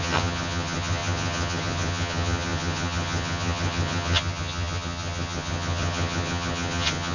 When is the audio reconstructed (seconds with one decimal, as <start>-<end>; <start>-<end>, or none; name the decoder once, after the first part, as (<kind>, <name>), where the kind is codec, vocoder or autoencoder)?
0.0-7.1 (vocoder, HiFi-GAN)